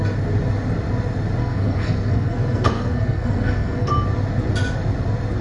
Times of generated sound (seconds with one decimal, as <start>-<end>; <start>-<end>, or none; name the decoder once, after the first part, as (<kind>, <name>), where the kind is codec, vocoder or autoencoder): 1.4-3.9 (codec, SNAC)